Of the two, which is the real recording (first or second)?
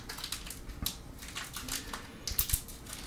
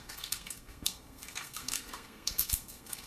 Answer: first